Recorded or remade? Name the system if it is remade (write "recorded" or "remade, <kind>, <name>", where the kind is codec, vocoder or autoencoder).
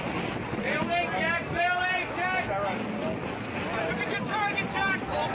recorded